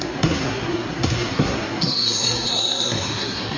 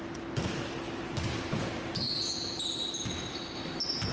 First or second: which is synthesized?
first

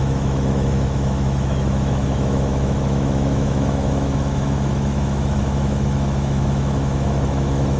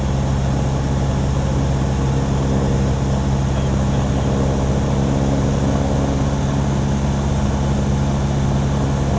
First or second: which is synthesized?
first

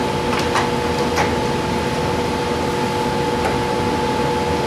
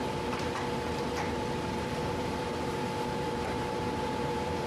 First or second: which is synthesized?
second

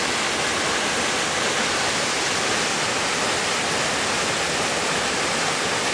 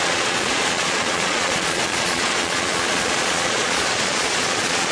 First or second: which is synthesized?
second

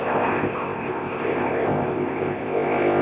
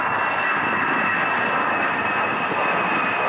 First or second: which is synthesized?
first